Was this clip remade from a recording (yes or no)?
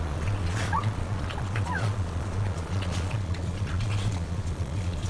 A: yes